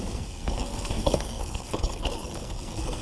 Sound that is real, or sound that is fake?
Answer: fake